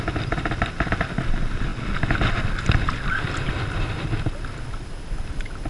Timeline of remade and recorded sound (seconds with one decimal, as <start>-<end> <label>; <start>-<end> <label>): 0.0-1.7 remade; 1.7-3.5 recorded; 3.5-5.7 remade